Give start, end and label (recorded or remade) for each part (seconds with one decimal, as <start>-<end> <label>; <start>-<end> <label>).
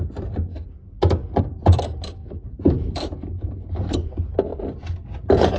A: 0.0-2.2 recorded; 2.2-4.1 remade; 4.1-5.6 recorded